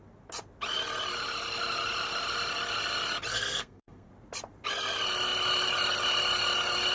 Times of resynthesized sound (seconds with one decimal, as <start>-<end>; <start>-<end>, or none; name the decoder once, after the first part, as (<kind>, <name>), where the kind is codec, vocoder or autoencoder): 3.3-4.1 (codec, SNAC)